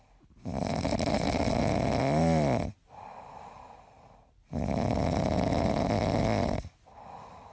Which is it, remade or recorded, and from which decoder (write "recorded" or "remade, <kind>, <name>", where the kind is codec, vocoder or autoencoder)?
recorded